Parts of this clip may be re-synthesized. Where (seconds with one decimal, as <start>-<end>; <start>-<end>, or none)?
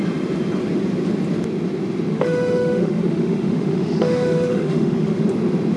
2.1-5.2